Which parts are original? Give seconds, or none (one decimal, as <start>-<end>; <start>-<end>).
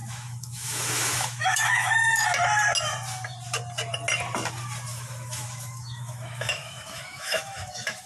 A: 2.1-4.9